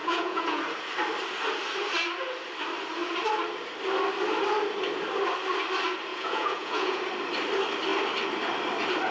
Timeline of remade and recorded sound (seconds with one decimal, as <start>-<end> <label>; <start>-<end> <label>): 0.0-0.6 remade; 0.6-6.1 recorded; 6.1-7.0 remade; 7.0-9.1 recorded